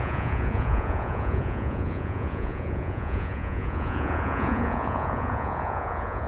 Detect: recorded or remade remade